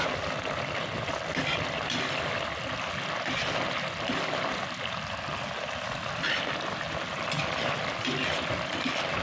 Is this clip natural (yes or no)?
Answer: yes